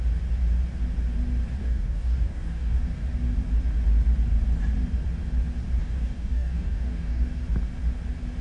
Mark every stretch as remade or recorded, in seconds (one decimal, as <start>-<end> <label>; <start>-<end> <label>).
0.0-1.6 recorded; 1.6-2.8 remade; 2.8-5.8 recorded; 5.8-7.4 remade; 7.4-8.4 recorded